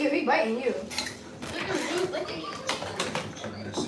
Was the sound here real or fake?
real